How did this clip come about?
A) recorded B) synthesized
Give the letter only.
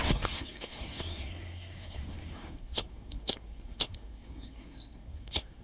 B